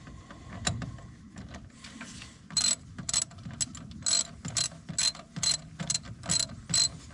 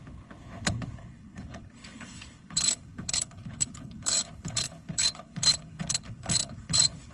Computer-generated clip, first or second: second